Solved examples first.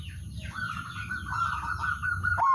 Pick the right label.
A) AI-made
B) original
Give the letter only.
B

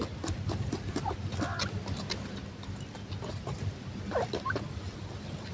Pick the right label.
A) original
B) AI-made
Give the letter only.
A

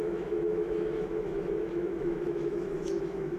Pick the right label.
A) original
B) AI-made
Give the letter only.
B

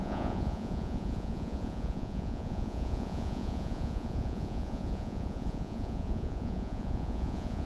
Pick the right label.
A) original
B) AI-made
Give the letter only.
B